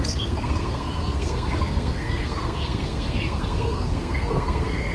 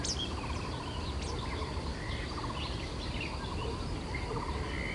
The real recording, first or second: second